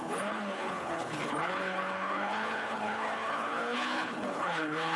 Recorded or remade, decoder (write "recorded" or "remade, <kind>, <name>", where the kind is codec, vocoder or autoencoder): remade, codec, HILCodec